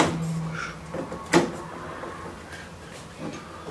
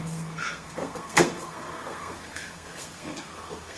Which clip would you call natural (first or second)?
first